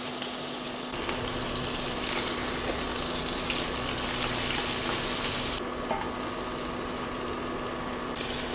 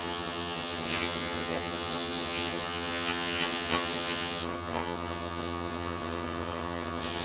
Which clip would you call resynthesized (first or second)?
second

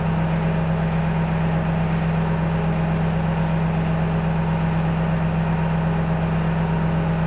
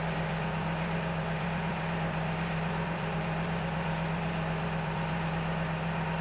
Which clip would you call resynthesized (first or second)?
second